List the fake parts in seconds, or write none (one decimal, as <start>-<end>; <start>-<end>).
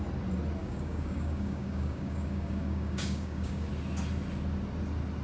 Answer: 0.6-3.7